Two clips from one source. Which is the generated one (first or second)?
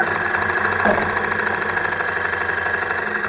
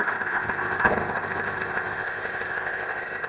second